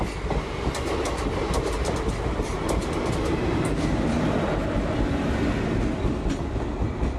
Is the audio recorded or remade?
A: recorded